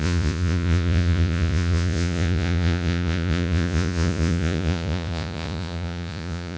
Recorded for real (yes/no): no